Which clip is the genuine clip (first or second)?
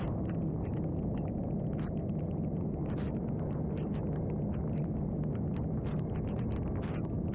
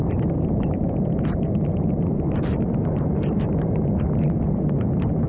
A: first